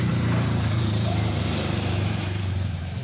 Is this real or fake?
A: fake